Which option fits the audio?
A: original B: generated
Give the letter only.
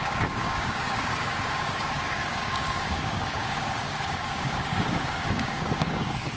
B